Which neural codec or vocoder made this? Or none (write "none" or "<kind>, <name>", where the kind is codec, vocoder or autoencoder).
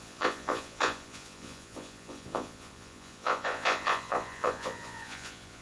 vocoder, Vocos